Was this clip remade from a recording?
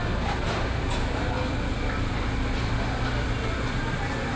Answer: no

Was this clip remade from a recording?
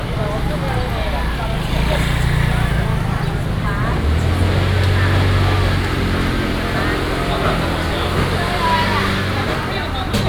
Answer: no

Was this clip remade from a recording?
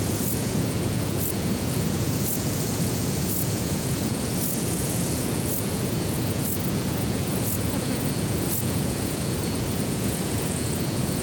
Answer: yes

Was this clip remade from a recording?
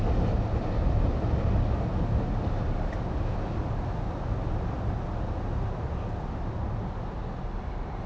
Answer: no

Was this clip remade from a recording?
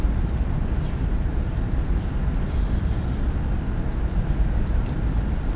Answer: no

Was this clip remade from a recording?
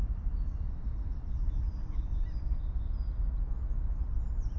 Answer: no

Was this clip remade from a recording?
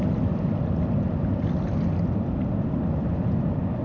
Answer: no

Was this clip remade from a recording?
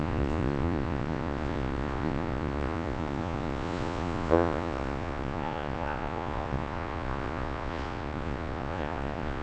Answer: yes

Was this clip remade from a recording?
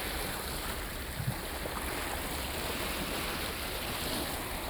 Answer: no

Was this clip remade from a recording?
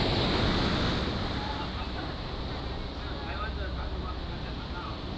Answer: no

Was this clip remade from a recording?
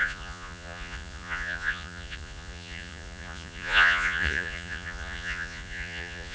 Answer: yes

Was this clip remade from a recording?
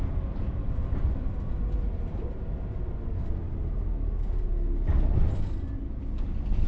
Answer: no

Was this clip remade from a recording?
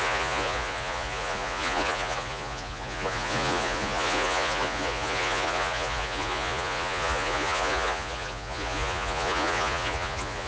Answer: yes